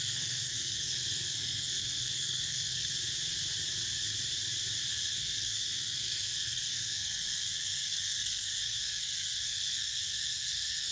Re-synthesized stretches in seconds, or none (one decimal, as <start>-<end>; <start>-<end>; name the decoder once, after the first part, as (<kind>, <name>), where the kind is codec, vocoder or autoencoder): 0.0-2.9 (codec, SNAC); 4.9-10.9